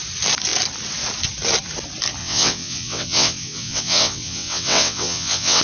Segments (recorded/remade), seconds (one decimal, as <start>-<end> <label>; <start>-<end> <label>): 0.0-2.2 recorded; 2.2-5.6 remade